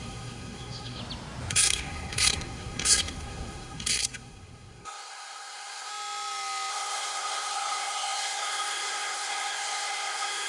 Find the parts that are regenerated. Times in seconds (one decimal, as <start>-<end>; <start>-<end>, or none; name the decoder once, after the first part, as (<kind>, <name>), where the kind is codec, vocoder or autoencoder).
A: 0.0-1.0 (codec, SNAC); 1.5-5.9; 6.7-10.5